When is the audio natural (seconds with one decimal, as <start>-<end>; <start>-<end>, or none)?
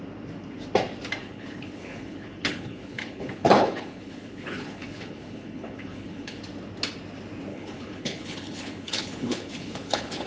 0.0-1.2; 6.4-7.5